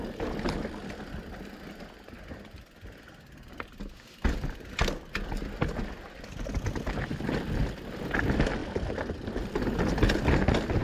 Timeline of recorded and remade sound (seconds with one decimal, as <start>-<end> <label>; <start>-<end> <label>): 0.0-10.8 recorded